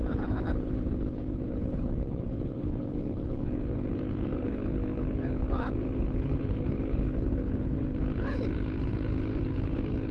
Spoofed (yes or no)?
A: yes